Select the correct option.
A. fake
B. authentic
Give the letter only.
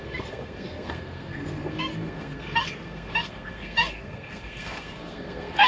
A